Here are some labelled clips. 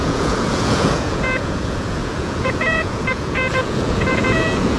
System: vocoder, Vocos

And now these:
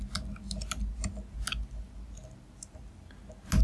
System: none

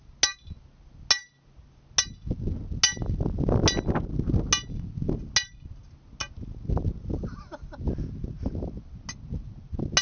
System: none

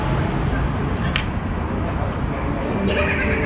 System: none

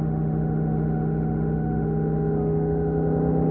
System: autoencoder, DAC-VAE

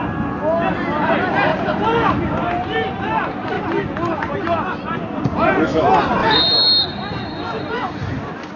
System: none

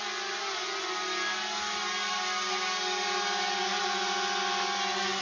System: none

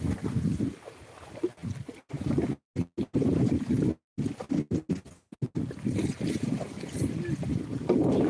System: none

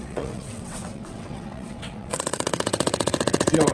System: vocoder, WaveNeXt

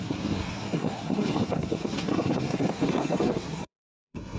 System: codec, SNAC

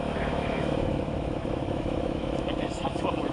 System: autoencoder, DAC-VAE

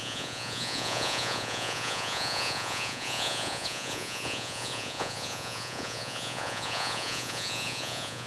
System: vocoder, Vocos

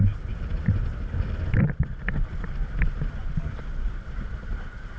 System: none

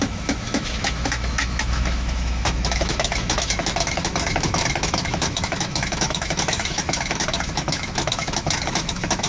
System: autoencoder, DAC-VAE